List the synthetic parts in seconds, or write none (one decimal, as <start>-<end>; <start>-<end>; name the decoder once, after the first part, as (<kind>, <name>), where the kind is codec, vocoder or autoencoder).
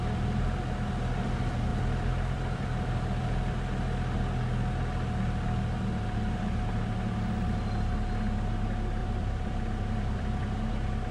1.7-3.5 (vocoder, BigVGAN v2); 9.0-10.7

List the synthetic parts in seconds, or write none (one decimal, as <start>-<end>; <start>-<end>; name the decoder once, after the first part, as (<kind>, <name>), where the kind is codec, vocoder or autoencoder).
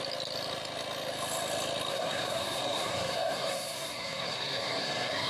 1.9-5.3 (codec, SNAC)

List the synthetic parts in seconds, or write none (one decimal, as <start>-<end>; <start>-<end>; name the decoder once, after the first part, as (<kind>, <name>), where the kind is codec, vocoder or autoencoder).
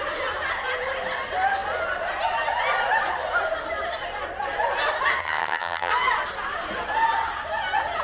5.2-5.9 (vocoder, HiFi-GAN)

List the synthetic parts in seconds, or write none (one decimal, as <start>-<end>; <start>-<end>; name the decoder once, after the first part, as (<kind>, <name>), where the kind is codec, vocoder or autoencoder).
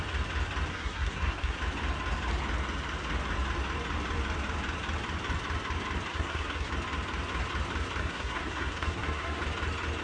0.7-1.6 (codec, SNAC); 6.1-6.7; 8.0-9.4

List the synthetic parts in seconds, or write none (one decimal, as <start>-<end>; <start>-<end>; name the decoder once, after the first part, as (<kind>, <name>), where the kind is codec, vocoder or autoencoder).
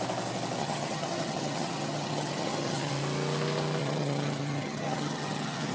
0.6-2.9 (vocoder, HiFi-GAN); 3.8-5.7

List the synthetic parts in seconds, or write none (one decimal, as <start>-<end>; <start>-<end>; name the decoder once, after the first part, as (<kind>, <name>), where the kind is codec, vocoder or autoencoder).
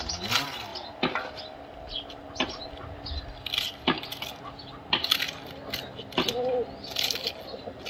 none